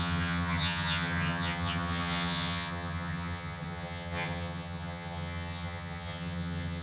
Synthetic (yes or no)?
yes